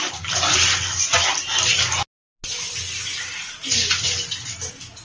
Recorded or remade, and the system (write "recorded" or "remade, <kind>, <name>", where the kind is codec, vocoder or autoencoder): recorded